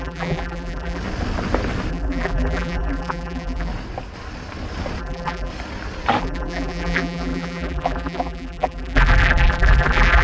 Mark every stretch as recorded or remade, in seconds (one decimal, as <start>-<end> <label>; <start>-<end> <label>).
0.0-1.0 remade; 1.0-1.9 recorded; 1.9-3.7 remade; 3.7-5.0 recorded; 5.0-5.5 remade; 5.5-6.2 recorded; 6.2-10.2 remade